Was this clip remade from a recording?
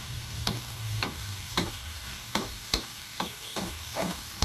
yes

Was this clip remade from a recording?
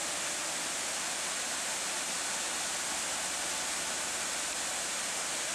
no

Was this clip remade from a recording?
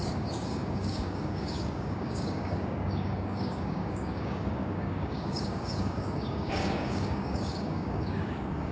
yes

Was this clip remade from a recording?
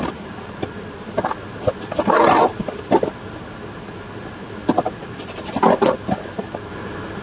no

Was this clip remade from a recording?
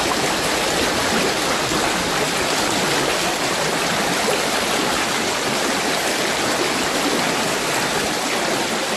no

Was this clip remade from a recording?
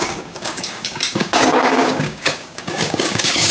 yes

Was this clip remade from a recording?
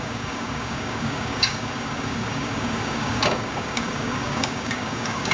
yes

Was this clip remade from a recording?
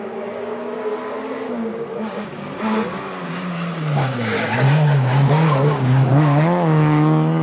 yes